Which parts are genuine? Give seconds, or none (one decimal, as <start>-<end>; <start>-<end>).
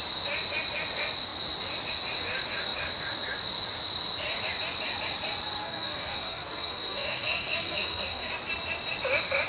0.0-5.6; 8.3-9.5